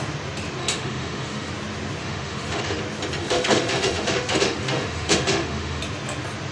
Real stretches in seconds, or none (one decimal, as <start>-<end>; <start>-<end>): 0.0-0.6; 1.5-2.0; 2.8-3.2; 5.8-6.5